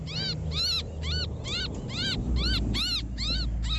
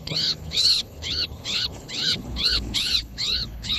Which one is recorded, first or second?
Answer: first